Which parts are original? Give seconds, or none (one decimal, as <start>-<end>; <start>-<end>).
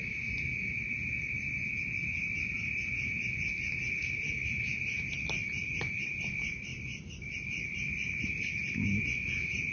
none